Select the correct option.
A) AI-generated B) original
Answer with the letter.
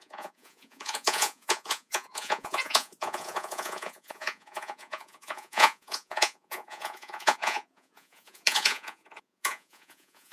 A